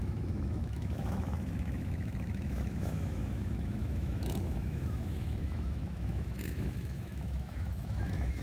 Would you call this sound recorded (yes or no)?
no